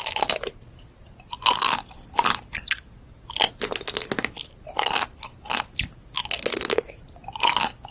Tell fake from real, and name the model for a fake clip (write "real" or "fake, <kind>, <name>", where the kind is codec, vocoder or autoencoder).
real